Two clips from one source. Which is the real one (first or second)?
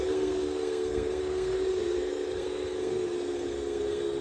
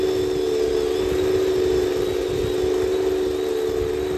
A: second